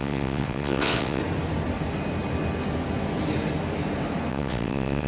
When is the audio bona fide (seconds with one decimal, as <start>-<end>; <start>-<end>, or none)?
1.2-4.3